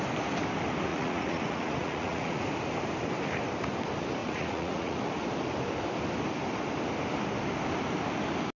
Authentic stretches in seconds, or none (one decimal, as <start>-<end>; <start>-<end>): 0.0-0.9; 2.4-4.2; 5.1-8.6